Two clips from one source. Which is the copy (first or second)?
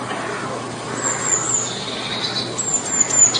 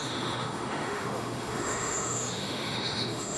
second